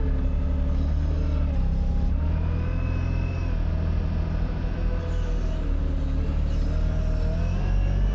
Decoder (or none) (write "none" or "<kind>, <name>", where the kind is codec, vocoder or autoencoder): none